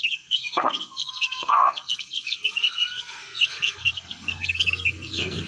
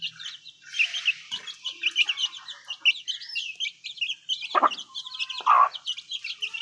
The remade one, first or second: first